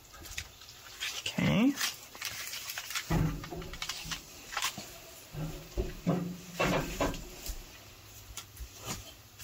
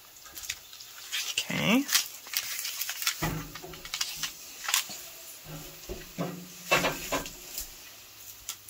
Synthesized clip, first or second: first